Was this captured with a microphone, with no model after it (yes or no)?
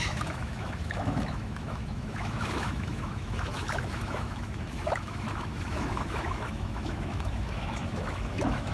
no